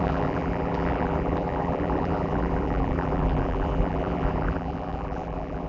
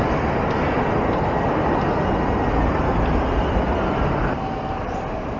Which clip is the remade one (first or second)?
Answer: first